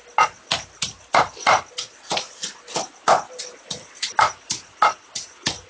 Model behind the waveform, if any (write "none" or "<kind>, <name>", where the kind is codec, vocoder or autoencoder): none